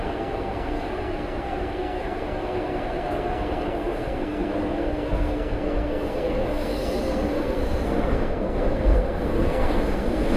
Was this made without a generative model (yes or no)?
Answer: no